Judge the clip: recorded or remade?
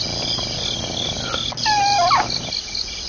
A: recorded